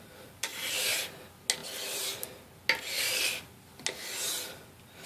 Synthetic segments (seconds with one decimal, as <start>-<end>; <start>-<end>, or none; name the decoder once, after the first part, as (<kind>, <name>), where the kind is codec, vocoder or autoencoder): 0.5-1.2 (vocoder, BigVGAN v2)